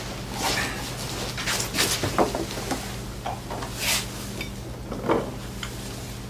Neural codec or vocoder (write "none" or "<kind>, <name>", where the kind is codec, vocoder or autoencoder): none